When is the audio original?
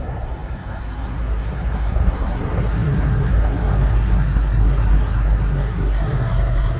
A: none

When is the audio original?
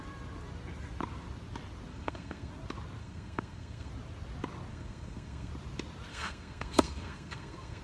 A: 0.0-1.9; 2.5-3.0; 3.9-4.7; 5.5-6.1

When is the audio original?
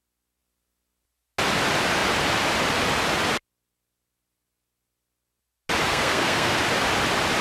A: 0.0-5.9; 6.6-7.4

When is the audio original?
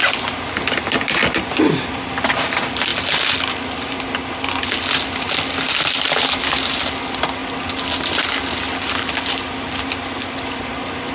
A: 0.0-11.1